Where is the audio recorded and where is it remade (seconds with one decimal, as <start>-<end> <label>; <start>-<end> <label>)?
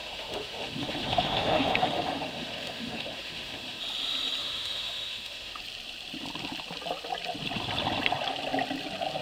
0.0-3.8 remade; 3.8-4.4 recorded; 4.4-5.6 remade; 5.6-9.2 recorded